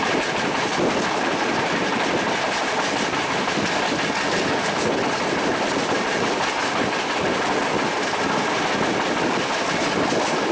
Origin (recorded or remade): recorded